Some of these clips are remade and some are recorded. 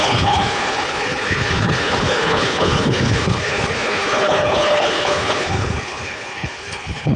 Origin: remade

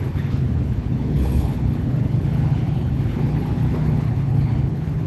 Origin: remade